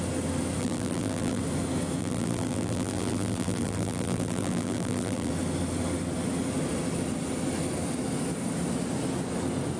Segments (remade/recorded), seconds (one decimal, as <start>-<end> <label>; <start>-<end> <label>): 0.0-0.6 recorded; 0.6-1.4 remade; 1.4-2.0 recorded; 2.0-5.3 remade; 5.3-9.8 recorded